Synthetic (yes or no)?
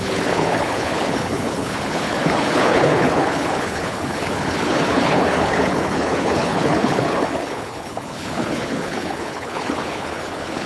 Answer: yes